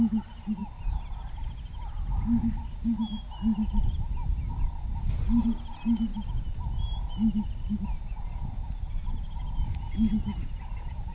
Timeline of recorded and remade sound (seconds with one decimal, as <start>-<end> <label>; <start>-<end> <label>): 0.0-11.1 recorded